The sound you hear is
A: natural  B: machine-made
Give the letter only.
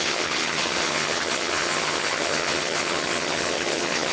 B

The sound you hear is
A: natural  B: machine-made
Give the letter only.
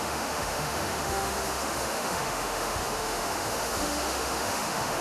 B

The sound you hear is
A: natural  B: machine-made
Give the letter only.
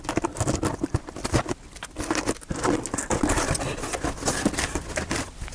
A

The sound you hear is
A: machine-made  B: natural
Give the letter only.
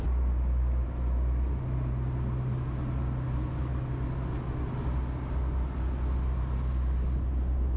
B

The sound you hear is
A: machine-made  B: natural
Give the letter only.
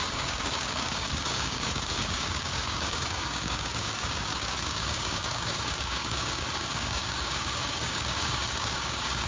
A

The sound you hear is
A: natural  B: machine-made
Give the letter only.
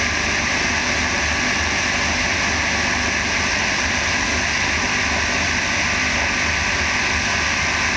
A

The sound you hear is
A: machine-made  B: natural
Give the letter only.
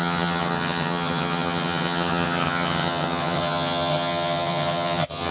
A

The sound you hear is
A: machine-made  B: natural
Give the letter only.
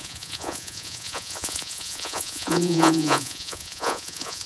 A